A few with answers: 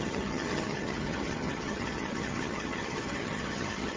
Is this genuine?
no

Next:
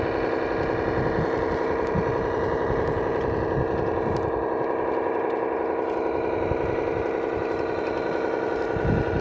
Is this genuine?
yes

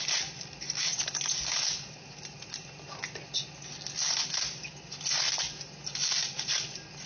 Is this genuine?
yes